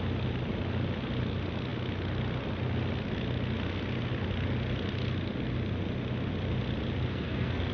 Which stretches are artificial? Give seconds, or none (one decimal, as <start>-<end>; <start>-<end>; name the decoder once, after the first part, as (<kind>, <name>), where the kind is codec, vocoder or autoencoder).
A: 7.1-7.7 (codec, SNAC)